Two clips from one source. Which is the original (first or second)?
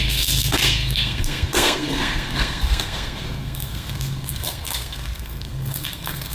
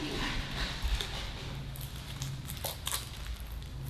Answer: second